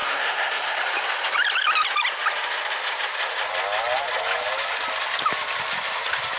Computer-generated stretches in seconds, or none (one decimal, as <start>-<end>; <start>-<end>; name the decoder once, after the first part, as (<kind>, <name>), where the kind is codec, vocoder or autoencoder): 0.0-0.8 (codec, SNAC)